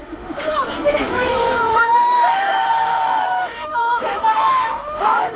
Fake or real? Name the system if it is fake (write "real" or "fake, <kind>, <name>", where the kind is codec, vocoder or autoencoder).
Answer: fake, autoencoder, DAC-VAE